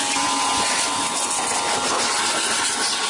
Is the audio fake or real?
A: real